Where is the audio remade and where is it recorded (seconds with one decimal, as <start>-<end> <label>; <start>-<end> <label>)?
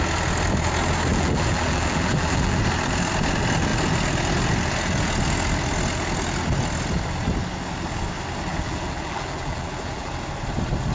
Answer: 0.0-1.1 recorded; 1.1-2.6 remade; 2.6-8.5 recorded; 8.5-10.1 remade; 10.1-10.9 recorded